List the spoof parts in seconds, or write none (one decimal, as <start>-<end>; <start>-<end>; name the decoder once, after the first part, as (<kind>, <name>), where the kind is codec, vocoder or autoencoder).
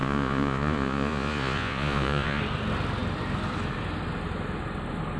0.0-2.4 (vocoder, Vocos)